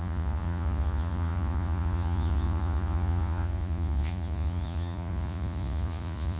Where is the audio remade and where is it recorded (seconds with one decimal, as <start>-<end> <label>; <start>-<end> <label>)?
0.0-6.4 remade